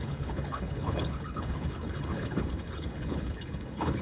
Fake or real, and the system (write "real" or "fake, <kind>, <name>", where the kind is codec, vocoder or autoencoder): fake, codec, HILCodec